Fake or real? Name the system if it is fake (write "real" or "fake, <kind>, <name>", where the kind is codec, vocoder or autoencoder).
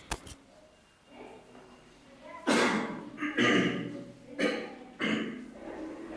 real